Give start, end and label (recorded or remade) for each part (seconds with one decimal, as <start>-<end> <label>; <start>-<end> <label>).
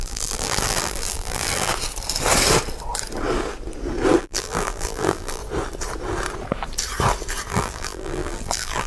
0.0-1.7 remade; 1.7-4.2 recorded; 4.2-5.4 remade; 5.4-7.5 recorded; 7.5-8.9 remade